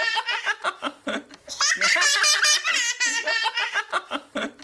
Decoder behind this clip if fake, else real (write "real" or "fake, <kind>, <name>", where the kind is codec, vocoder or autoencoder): real